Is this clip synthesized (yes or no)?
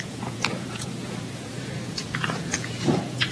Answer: yes